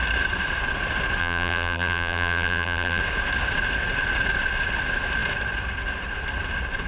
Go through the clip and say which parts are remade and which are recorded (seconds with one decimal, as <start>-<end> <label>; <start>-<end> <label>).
0.0-1.2 recorded; 1.2-3.0 remade; 3.0-6.9 recorded